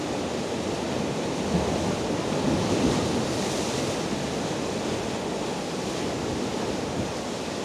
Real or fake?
real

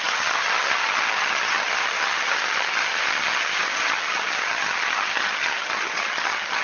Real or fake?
fake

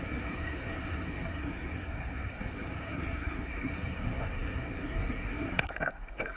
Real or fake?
fake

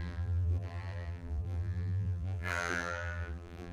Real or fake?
fake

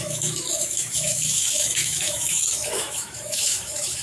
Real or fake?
fake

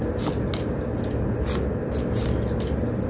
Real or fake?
real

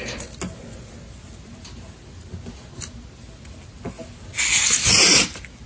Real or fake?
real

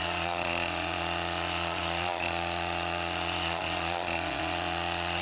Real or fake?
fake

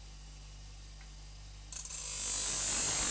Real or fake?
real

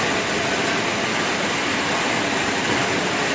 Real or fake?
real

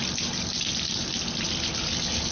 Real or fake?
real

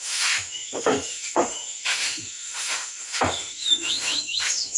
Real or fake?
fake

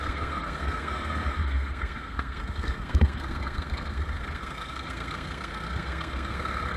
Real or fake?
fake